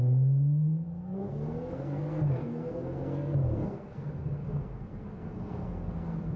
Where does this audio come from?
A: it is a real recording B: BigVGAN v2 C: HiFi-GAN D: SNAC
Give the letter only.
D